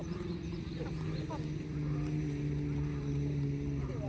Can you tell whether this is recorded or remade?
recorded